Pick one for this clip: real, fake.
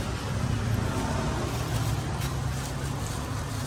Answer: real